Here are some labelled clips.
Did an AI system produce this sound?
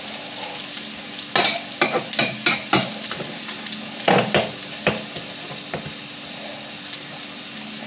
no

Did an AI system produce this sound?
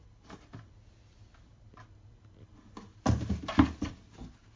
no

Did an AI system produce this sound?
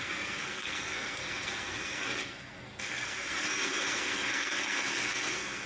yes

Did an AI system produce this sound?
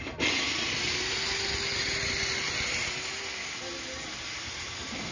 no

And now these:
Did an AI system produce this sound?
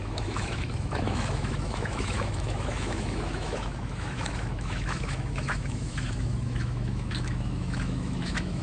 yes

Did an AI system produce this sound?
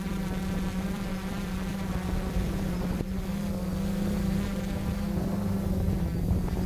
yes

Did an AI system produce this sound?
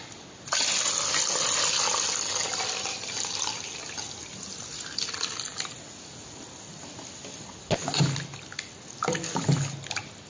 no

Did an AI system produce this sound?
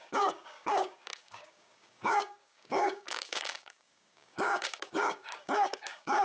yes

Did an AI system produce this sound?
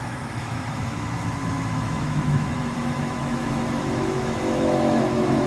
yes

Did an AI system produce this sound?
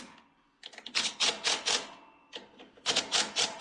no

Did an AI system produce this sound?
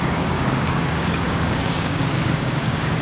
yes